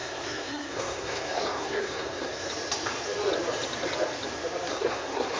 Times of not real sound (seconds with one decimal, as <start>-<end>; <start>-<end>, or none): 0.0-2.5; 4.7-5.4